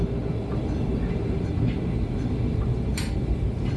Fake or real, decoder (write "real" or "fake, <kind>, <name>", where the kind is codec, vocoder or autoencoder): real